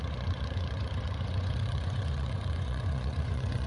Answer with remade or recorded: remade